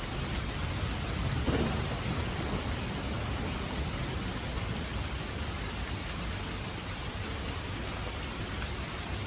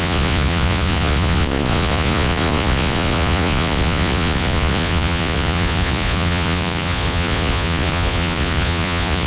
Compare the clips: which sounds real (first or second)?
first